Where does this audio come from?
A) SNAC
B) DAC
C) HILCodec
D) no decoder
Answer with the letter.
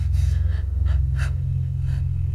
A